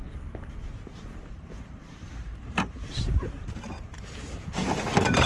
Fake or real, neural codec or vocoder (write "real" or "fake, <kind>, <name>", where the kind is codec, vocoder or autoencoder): fake, vocoder, BigVGAN v2